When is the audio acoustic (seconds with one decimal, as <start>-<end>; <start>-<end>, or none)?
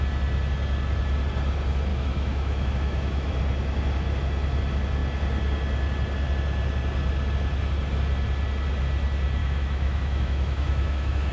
0.0-1.9; 3.4-9.4